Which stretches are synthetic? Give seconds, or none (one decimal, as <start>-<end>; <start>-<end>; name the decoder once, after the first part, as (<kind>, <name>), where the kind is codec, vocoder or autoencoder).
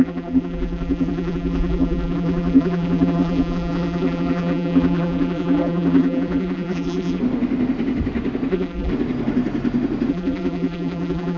0.0-7.2 (vocoder, BigVGAN v2); 8.5-8.9; 10.1-11.4